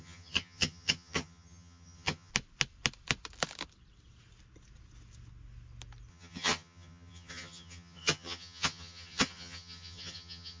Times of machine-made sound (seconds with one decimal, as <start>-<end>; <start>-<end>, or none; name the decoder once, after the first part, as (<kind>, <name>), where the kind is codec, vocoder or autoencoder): 0.0-2.3 (vocoder, HiFi-GAN); 6.1-10.6